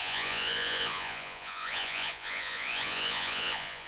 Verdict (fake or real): fake